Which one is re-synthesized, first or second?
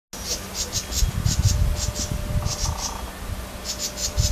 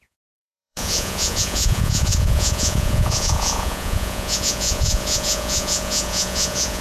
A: second